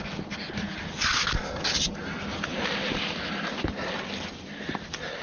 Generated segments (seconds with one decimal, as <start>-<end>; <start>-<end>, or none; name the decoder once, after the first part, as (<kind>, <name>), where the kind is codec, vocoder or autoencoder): none